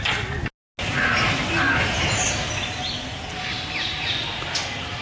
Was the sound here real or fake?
real